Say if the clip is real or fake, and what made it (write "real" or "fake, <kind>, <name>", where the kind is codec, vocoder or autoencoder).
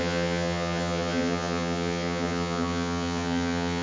fake, vocoder, HiFi-GAN